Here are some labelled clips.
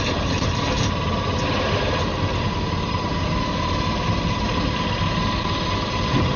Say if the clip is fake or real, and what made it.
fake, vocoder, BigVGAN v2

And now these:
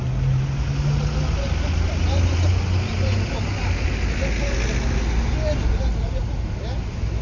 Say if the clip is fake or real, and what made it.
real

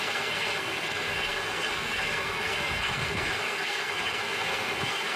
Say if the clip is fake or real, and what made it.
fake, codec, SNAC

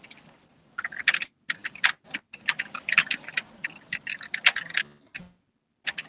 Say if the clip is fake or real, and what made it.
real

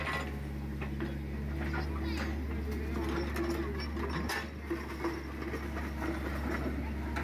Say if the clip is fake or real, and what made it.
real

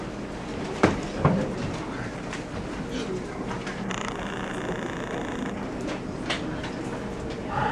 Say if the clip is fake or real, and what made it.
real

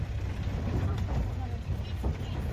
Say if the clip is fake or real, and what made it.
real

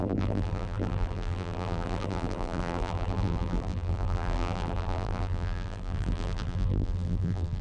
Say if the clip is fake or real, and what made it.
fake, vocoder, BigVGAN v2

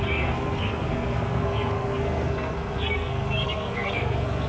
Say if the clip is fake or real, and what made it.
fake, codec, SNAC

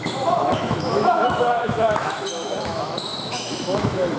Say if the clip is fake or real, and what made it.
fake, autoencoder, DAC-VAE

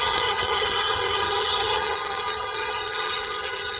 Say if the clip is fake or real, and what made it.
fake, vocoder, HiFi-GAN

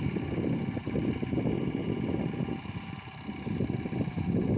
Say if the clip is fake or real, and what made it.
real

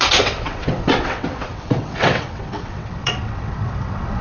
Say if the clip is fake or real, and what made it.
fake, vocoder, WaveNeXt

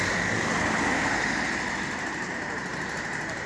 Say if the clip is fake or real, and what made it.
real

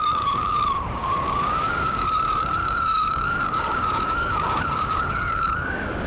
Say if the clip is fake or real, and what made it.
fake, codec, DAC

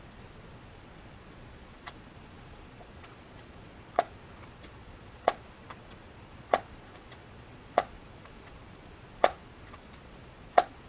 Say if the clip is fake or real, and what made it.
fake, vocoder, Vocos